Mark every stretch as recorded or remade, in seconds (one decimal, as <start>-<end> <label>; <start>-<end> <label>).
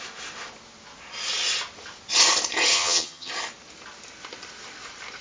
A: 0.0-2.7 recorded; 2.7-3.3 remade; 3.3-5.2 recorded